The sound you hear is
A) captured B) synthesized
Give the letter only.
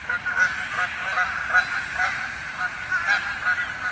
A